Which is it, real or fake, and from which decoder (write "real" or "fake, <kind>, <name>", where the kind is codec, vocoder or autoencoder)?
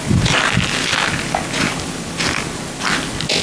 real